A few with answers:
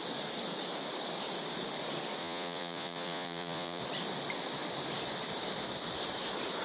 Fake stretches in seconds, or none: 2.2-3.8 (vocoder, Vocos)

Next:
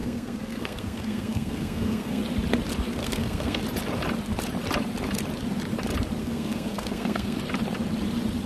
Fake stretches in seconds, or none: 0.0-2.2 (codec, SNAC); 3.0-3.6; 6.2-7.4

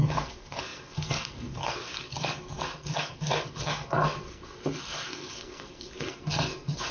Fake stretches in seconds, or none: 0.0-6.9 (codec, SNAC)